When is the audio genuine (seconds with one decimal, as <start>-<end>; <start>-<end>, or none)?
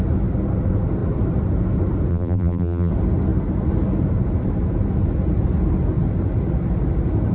0.0-2.1; 2.9-7.3